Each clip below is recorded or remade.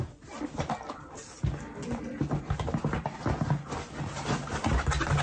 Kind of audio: recorded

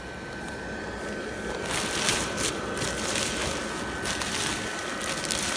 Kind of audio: recorded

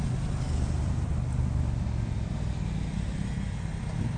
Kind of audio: recorded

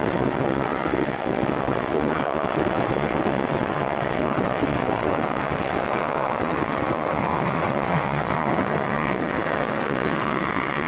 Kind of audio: remade